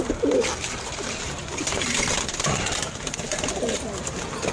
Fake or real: fake